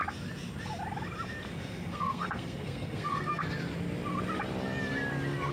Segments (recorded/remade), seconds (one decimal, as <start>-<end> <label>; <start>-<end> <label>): 0.0-1.5 recorded; 1.5-3.4 remade; 3.4-5.5 recorded

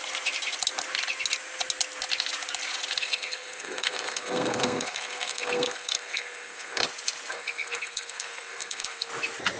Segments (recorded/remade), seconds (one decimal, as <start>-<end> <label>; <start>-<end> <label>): 0.0-3.0 recorded; 3.0-6.8 remade; 6.8-7.3 recorded; 7.3-9.1 remade; 9.1-9.6 recorded

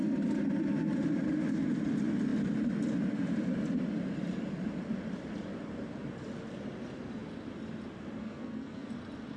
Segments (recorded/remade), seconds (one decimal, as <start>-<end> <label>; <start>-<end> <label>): 0.0-8.2 recorded; 8.2-8.9 remade; 8.9-9.4 recorded

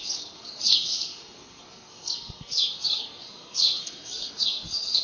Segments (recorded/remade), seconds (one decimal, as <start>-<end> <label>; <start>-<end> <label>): 0.0-5.0 remade

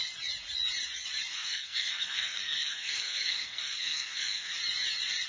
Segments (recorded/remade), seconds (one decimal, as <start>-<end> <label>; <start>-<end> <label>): 0.0-1.3 recorded; 1.3-4.5 remade; 4.5-5.3 recorded